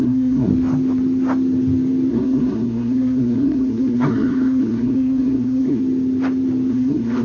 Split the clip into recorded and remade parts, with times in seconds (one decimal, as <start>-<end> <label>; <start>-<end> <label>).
0.0-0.5 remade; 0.5-2.1 recorded; 2.1-5.8 remade; 5.8-6.7 recorded; 6.7-7.2 remade